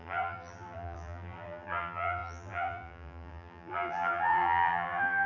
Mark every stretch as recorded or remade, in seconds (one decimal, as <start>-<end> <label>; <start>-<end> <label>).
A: 0.0-5.3 remade